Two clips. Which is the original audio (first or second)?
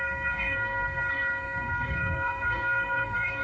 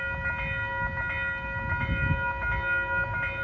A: second